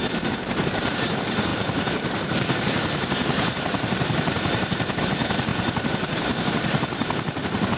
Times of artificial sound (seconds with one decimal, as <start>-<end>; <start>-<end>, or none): 0.0-7.8